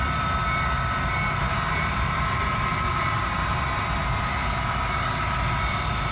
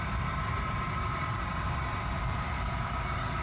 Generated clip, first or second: second